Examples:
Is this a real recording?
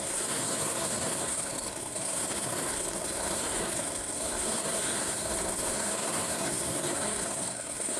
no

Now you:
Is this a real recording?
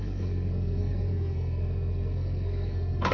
no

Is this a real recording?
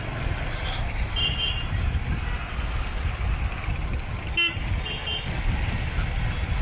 yes